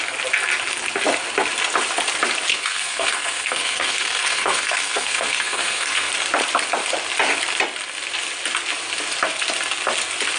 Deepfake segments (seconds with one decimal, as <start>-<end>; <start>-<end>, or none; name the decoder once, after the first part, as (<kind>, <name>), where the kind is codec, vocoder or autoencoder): 2.5-6.1 (codec, SNAC)